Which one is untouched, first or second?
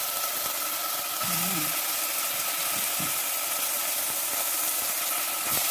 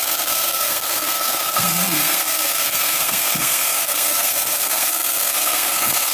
first